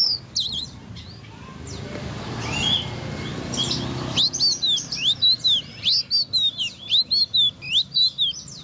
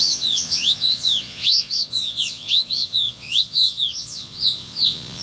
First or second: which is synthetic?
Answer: second